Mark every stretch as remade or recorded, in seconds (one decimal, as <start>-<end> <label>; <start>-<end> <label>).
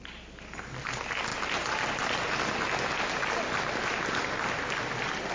0.0-5.3 recorded